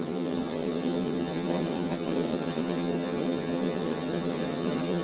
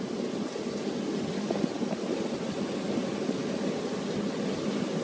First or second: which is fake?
first